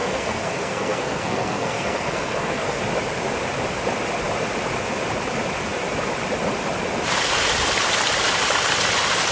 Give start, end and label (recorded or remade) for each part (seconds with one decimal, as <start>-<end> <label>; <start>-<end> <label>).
0.0-2.8 remade; 2.8-9.3 recorded

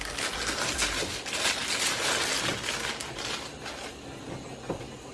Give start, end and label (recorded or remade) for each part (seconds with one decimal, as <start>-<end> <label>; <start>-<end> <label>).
0.0-5.1 recorded

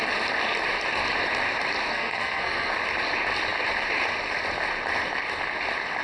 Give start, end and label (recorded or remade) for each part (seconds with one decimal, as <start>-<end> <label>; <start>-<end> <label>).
0.0-1.9 recorded; 1.9-2.7 remade; 2.7-6.0 recorded

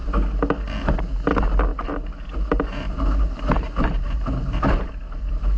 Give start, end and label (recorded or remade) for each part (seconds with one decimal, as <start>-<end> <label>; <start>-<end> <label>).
0.0-1.7 recorded; 1.7-4.9 remade; 4.9-5.6 recorded

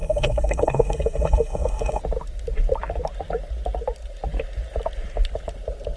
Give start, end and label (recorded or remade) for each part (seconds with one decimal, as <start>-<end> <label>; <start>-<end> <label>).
0.0-2.0 remade; 2.0-6.0 recorded